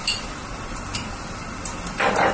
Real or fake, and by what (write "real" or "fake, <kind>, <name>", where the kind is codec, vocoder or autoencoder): real